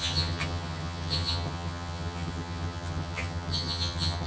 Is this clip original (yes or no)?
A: no